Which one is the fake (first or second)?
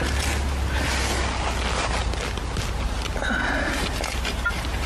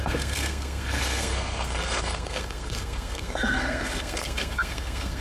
second